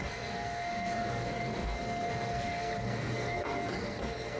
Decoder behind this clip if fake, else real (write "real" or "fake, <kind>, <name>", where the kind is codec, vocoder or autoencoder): fake, codec, SNAC